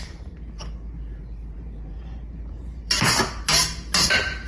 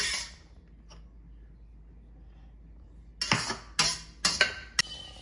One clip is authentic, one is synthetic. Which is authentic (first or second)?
second